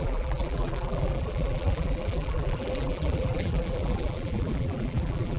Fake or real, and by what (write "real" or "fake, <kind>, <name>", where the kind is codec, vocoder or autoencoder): fake, vocoder, BigVGAN v2